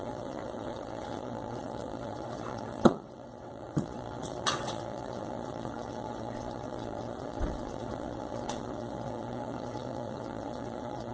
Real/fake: fake